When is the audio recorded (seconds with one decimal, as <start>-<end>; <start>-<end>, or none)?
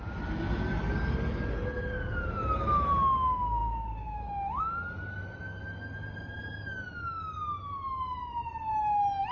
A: 0.0-3.6; 4.6-9.3